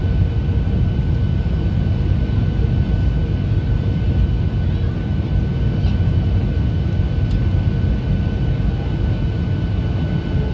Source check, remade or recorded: recorded